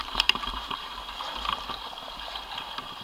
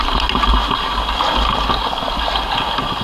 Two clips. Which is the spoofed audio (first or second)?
first